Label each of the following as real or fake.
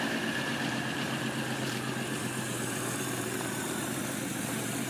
fake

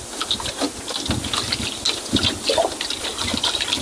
real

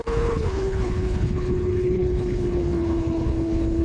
fake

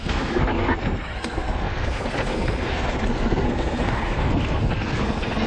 fake